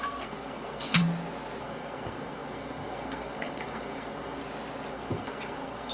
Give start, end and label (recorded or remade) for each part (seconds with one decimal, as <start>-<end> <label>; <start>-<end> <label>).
0.0-1.0 remade; 1.0-1.6 recorded; 1.6-4.4 remade; 4.4-4.9 recorded; 4.9-5.9 remade